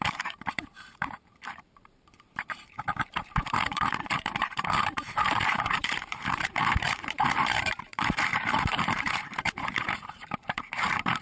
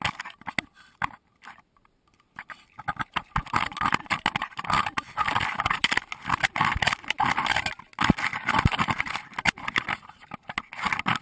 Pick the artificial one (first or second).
first